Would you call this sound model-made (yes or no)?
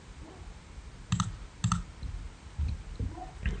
no